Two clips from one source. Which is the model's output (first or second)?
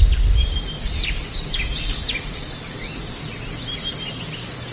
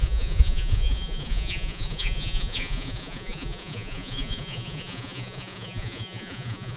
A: second